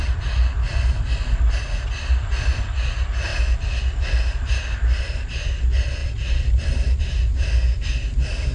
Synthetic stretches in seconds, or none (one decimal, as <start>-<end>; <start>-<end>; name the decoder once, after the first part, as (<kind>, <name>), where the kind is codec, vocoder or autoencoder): 6.0-7.0 (vocoder, BigVGAN v2)